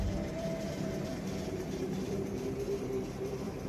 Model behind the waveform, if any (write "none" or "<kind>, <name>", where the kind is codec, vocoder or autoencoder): vocoder, BigVGAN v2